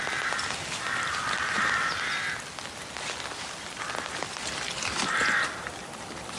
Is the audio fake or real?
real